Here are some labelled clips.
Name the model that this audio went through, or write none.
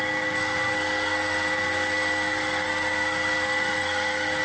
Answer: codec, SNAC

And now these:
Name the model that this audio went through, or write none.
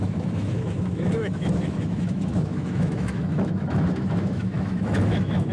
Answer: autoencoder, DAC-VAE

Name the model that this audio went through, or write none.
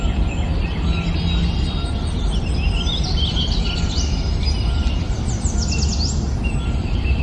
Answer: none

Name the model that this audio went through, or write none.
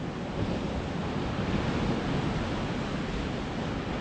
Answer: none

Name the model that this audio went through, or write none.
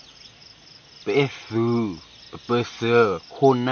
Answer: none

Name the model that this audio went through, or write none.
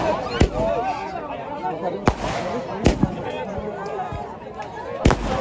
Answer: none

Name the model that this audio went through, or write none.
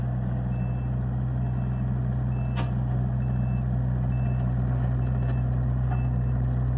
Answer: none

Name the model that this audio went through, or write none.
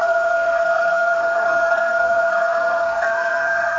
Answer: codec, SNAC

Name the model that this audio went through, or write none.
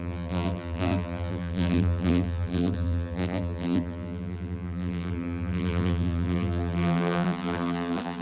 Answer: vocoder, BigVGAN v2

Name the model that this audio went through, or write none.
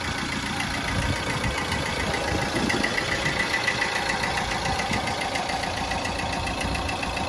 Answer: none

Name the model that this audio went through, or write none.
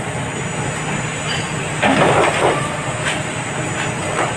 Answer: none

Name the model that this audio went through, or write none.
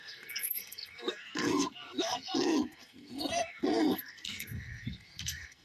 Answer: codec, SNAC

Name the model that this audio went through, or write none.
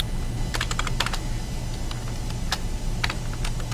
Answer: none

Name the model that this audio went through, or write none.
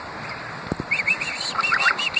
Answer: none